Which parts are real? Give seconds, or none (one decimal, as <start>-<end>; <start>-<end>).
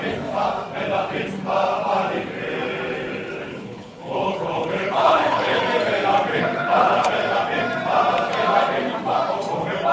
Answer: 0.0-3.5; 5.6-6.3; 7.1-9.9